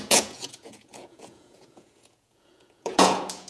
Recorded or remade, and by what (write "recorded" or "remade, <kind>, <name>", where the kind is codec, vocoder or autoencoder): remade, vocoder, Vocos